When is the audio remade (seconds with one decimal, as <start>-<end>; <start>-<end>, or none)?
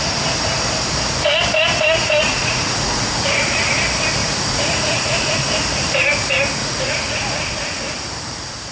2.3-3.6; 4.2-5.3; 6.6-7.8